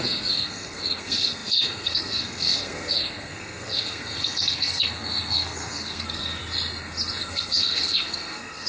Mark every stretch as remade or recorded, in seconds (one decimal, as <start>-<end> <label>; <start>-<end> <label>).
0.0-6.4 remade; 6.4-7.2 recorded; 7.2-8.7 remade